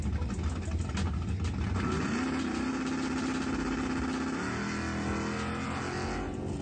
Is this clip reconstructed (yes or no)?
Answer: no